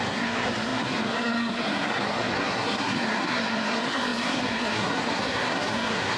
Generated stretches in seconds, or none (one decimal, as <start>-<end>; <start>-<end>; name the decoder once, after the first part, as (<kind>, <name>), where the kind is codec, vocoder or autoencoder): 0.0-6.2 (codec, SNAC)